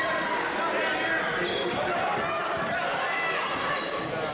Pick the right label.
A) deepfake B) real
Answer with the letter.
B